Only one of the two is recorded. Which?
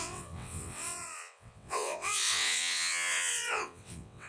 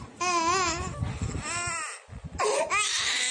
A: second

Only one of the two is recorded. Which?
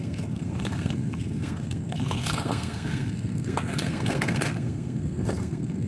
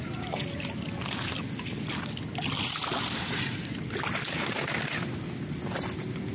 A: second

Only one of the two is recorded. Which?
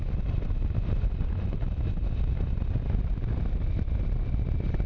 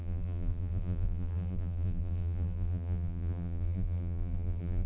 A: first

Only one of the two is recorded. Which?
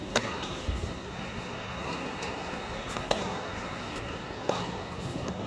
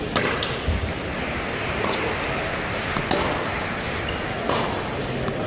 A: second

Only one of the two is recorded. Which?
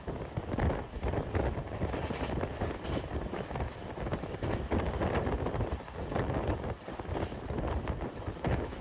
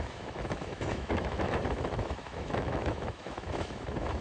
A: first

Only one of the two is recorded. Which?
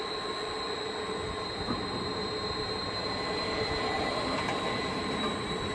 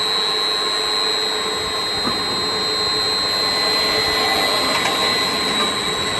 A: second